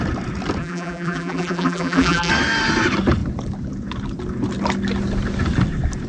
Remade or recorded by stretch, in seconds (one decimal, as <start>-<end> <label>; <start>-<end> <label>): 0.0-0.6 recorded; 0.6-2.3 remade; 2.3-6.1 recorded